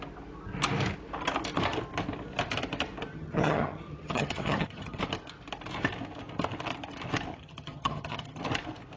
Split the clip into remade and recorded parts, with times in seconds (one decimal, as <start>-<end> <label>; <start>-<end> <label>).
0.0-3.1 recorded; 3.1-5.0 remade; 5.0-7.3 recorded; 7.3-8.4 remade; 8.4-9.0 recorded